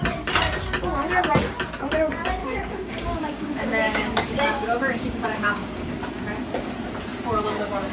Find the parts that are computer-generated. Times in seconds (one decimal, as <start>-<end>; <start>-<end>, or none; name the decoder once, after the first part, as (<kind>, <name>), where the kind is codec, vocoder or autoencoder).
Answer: 2.4-5.9 (codec, DAC)